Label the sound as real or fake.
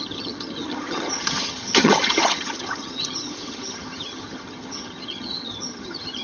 fake